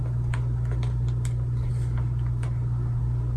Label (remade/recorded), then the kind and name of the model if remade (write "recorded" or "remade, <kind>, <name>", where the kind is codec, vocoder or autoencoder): recorded